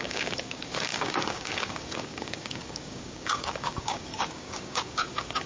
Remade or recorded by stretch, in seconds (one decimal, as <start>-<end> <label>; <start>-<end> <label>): 0.0-5.5 remade